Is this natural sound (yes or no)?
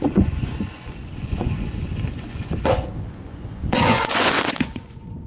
no